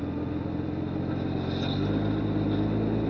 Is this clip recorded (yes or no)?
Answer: yes